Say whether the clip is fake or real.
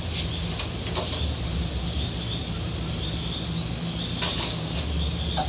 real